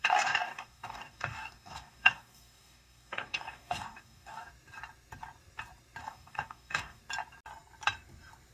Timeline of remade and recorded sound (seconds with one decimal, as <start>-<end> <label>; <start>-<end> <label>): 0.0-4.5 remade; 4.5-6.0 recorded; 6.0-7.0 remade; 7.0-8.5 recorded